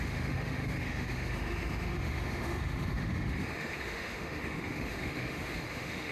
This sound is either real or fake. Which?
fake